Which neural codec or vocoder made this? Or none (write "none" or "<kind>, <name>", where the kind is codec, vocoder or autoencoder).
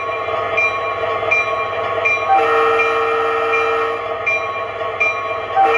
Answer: none